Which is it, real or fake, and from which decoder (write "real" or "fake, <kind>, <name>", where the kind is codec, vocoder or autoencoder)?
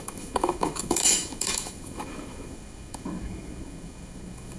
fake, autoencoder, DAC-VAE